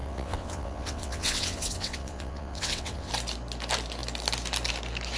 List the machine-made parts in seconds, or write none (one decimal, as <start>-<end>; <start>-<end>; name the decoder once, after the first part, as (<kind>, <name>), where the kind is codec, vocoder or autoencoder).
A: 0.0-3.1 (vocoder, WaveNeXt)